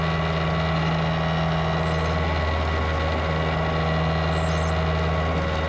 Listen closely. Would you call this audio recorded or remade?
recorded